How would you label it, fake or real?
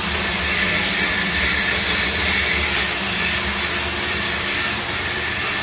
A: real